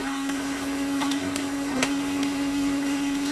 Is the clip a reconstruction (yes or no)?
yes